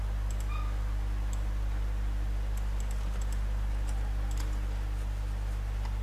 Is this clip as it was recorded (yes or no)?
yes